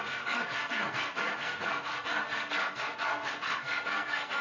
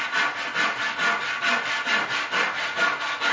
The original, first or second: second